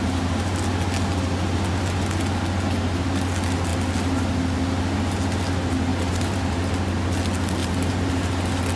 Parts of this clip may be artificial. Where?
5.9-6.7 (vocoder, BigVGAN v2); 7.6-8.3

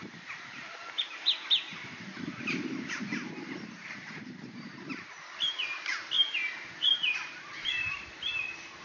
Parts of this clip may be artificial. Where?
0.0-8.8 (vocoder, BigVGAN v2)

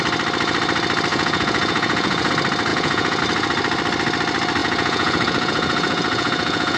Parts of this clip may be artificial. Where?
1.1-2.3 (vocoder, Vocos); 2.7-3.2; 4.6-6.8

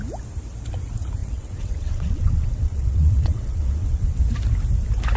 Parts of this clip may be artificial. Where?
1.2-4.2 (vocoder, WaveNeXt)

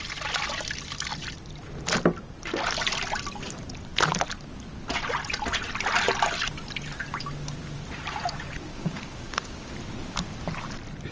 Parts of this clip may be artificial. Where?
8.7-9.7 (codec, DAC)

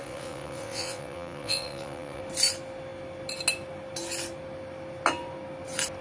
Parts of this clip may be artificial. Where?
0.0-2.2 (vocoder, WaveNeXt)

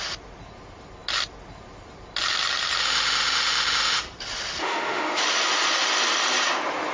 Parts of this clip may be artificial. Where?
2.8-4.0 (autoencoder, DAC-VAE); 4.6-5.2